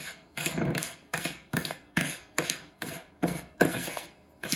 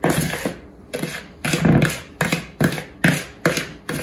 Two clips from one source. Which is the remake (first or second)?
first